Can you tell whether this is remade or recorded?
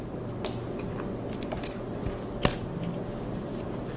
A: recorded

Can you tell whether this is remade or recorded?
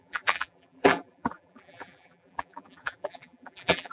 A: remade